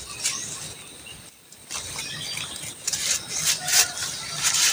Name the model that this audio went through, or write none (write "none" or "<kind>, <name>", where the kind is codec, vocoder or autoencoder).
vocoder, BigVGAN v2